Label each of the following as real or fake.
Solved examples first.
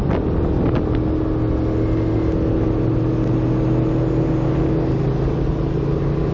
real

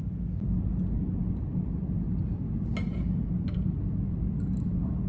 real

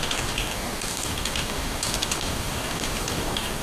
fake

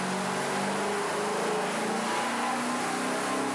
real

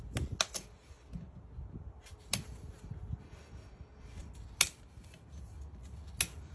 real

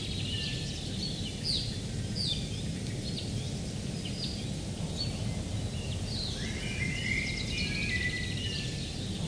real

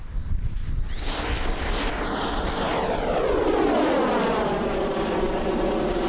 real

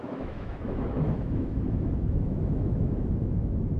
fake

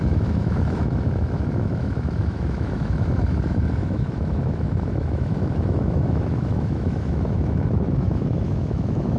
fake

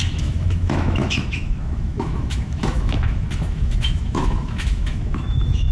fake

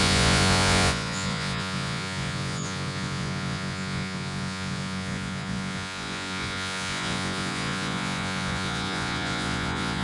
fake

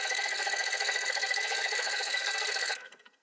fake